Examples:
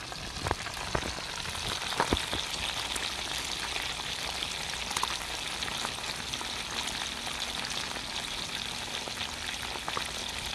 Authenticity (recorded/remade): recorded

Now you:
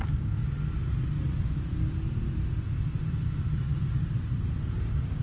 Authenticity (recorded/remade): recorded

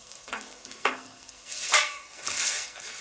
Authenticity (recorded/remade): remade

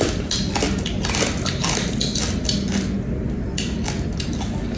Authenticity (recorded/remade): recorded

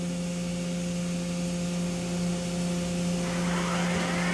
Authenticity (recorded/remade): recorded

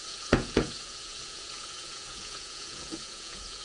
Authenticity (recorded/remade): remade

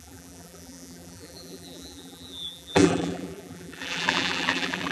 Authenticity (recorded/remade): remade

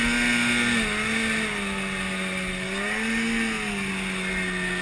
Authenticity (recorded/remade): recorded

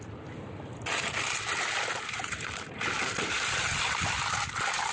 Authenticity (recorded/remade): recorded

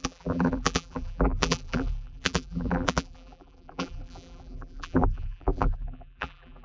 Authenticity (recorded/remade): remade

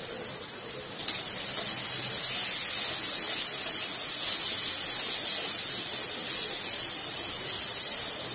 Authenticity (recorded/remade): recorded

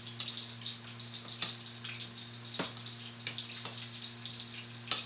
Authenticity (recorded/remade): recorded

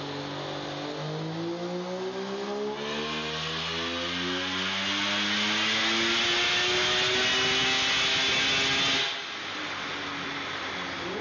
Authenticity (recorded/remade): recorded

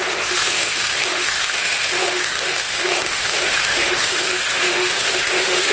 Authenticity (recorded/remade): remade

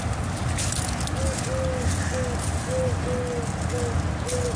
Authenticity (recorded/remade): recorded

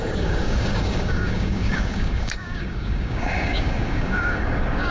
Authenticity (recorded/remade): remade